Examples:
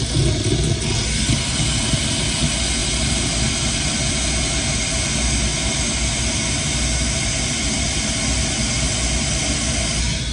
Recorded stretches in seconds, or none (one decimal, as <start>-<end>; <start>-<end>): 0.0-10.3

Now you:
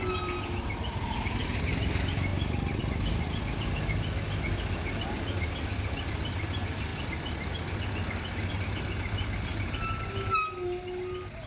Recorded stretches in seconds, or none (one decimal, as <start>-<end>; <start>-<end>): 0.0-11.5

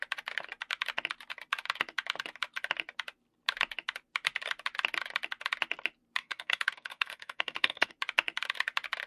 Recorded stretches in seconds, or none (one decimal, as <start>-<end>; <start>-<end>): 0.0-6.2; 7.9-9.1

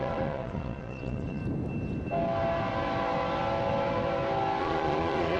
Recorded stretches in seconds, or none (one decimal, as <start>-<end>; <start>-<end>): 1.4-4.6

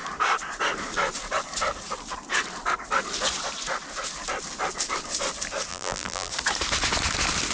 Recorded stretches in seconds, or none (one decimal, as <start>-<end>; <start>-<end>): 0.0-5.7; 6.3-7.5